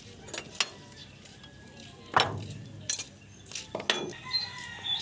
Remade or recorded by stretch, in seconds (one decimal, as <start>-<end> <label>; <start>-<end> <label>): 0.0-5.0 recorded